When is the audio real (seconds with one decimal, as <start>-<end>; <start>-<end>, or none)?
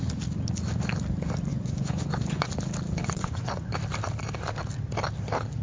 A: 0.0-1.5; 2.5-3.0; 3.7-5.6